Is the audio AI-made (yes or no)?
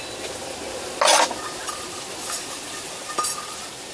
no